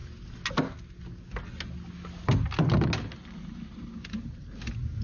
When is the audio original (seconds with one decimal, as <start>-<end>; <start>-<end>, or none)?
0.0-5.0

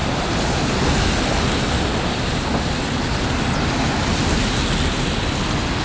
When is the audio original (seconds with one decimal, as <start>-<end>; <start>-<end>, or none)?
0.0-5.8

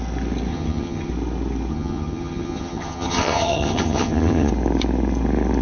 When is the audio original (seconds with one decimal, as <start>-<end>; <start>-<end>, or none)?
0.0-0.5; 1.1-1.7; 4.5-5.6

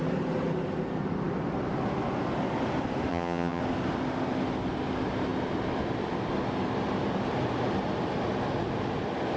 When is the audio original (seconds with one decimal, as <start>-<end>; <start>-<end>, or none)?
0.0-3.1; 3.6-9.4